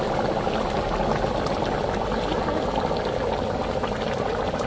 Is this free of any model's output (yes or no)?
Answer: yes